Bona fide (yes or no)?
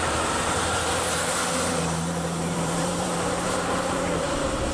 no